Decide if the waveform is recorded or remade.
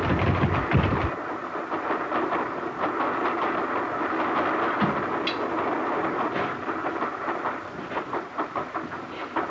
recorded